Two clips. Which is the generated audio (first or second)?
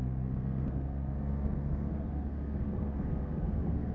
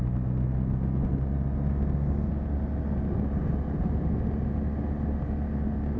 first